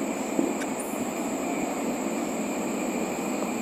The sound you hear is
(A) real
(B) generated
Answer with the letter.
A